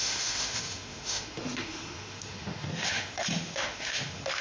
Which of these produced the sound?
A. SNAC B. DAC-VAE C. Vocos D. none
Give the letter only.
B